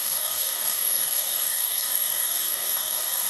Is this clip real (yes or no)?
no